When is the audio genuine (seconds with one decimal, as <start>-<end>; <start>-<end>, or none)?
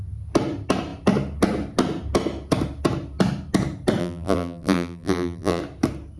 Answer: 0.0-4.0; 5.6-6.2